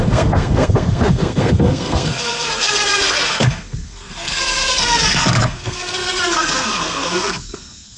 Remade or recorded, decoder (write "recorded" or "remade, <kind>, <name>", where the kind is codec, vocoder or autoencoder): remade, codec, SNAC